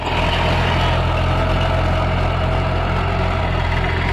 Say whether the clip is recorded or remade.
recorded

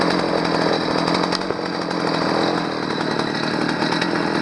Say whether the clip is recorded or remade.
recorded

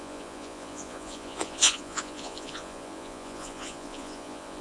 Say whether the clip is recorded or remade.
remade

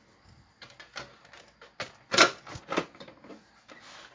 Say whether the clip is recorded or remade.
recorded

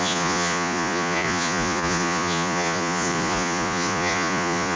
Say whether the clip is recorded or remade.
remade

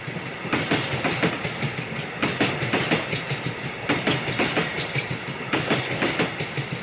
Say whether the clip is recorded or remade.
recorded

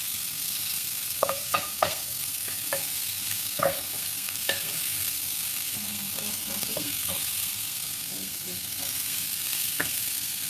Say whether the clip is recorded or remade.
remade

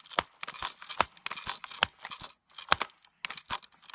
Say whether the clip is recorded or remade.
recorded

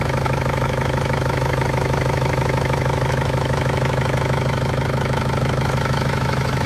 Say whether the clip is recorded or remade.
remade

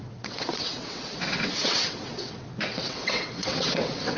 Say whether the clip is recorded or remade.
remade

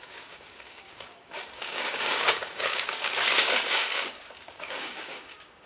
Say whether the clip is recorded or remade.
remade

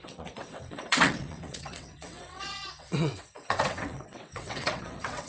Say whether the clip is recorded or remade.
remade